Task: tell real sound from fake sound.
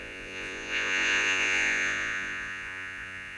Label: fake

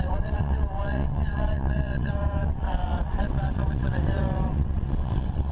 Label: fake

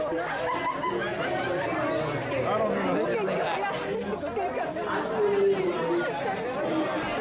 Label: real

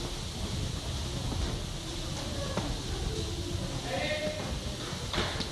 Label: real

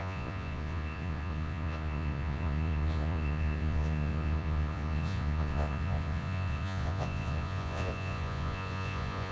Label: fake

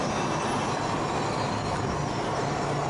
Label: real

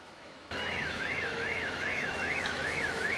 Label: fake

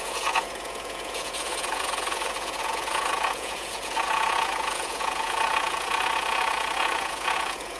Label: fake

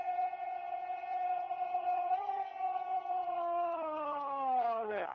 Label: fake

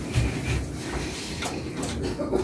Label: real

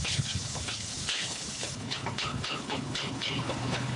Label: fake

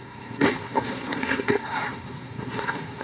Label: fake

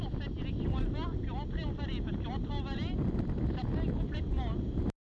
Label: real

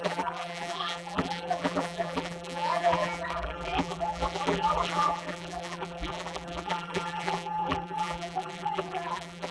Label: fake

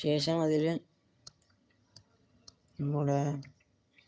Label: fake